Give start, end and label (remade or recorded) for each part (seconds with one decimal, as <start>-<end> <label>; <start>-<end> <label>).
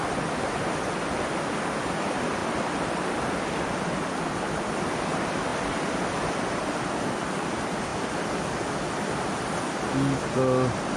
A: 0.0-2.4 recorded; 2.4-3.4 remade; 3.4-11.0 recorded